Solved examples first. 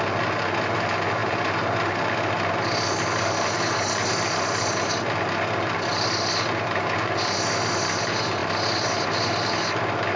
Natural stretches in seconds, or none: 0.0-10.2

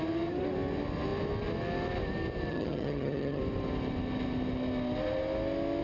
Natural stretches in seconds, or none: 0.0-2.5; 3.4-5.8

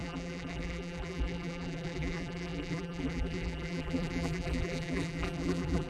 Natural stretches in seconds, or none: none

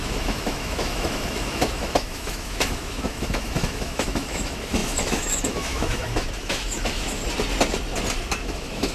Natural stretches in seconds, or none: 7.2-8.4

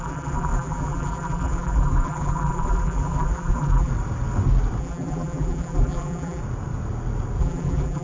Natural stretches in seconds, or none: 3.9-4.8; 6.4-7.4